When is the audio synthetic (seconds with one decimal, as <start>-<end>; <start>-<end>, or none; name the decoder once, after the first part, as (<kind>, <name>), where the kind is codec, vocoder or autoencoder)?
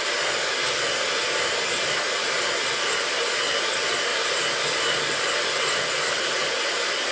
none